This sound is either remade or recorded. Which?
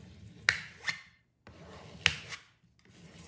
recorded